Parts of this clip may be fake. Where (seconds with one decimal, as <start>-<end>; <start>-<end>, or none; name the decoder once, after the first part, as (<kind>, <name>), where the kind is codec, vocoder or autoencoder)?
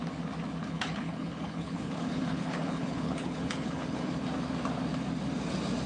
0.6-4.1 (codec, HILCodec)